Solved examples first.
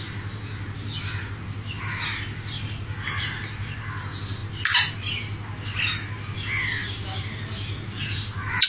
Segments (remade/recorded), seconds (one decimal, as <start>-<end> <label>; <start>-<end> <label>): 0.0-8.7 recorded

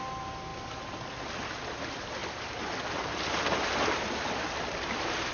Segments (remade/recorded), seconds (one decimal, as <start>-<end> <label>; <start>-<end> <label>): 0.0-2.2 remade; 2.2-5.3 recorded

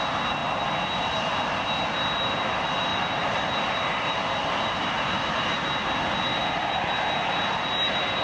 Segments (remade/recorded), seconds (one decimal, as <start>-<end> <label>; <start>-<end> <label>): 0.0-2.9 recorded; 2.9-5.2 remade; 5.2-8.2 recorded

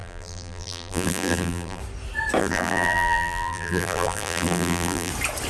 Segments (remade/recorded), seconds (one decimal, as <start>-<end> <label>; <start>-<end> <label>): 0.0-1.8 remade; 1.8-2.4 recorded; 2.4-5.1 remade; 5.1-5.5 recorded